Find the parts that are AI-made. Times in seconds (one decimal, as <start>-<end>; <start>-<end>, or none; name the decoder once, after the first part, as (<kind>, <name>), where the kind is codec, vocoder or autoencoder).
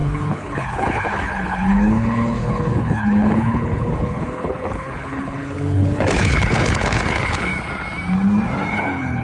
0.0-7.5 (codec, HILCodec); 8.7-9.2